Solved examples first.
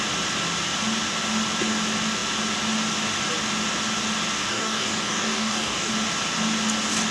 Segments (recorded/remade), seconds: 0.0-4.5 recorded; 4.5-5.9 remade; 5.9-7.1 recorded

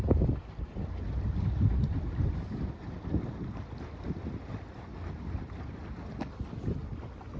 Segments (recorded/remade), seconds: 0.0-7.4 recorded

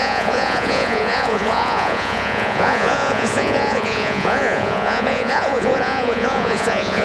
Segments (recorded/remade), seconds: 0.0-7.0 remade

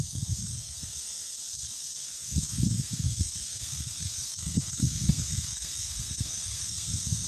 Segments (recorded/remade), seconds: 0.0-7.3 remade

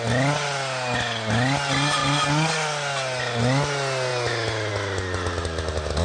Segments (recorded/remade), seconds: 0.0-6.0 recorded

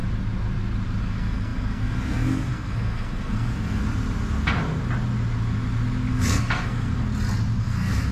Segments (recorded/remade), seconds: 0.0-1.0 recorded; 1.0-3.8 remade; 3.8-6.1 recorded; 6.1-7.0 remade; 7.0-7.6 recorded; 7.6-8.1 remade